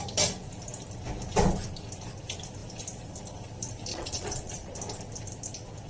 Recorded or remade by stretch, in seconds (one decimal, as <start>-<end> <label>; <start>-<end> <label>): 0.0-3.9 recorded; 3.9-4.7 remade; 4.7-5.9 recorded